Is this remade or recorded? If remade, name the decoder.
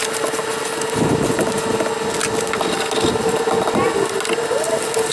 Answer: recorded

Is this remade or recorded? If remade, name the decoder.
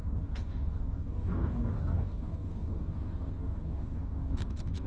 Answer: remade, codec, DAC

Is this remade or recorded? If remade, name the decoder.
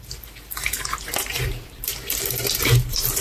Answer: remade, vocoder, BigVGAN v2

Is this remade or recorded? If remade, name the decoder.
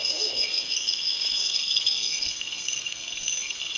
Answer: remade, codec, SNAC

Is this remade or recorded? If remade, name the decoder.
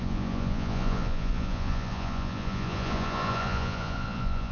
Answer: remade, vocoder, Vocos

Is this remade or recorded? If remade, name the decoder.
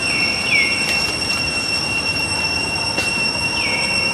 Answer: recorded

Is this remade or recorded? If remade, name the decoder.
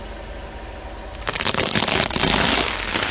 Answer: recorded